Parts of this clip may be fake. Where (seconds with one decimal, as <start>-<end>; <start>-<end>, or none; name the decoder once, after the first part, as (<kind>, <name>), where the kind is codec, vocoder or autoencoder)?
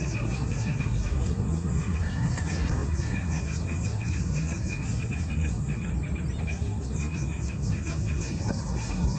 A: 0.0-5.9 (codec, SNAC); 6.4-9.2